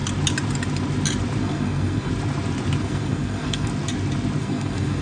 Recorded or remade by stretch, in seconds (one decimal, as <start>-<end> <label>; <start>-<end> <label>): 0.0-1.4 recorded; 1.4-2.1 remade; 2.1-2.8 recorded; 2.8-3.7 remade; 3.7-4.4 recorded; 4.4-5.0 remade